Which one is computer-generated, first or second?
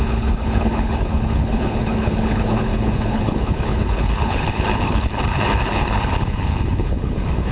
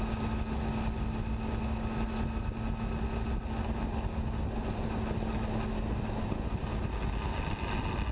first